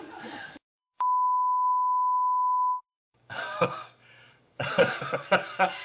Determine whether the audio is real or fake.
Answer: fake